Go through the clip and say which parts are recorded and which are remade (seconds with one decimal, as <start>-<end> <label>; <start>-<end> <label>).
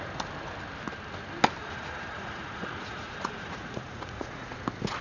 0.0-1.6 recorded; 1.6-4.6 remade; 4.6-5.0 recorded